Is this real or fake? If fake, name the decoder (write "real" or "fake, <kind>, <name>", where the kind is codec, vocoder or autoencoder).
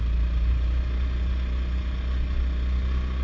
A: real